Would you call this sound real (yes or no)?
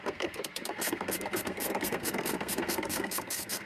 no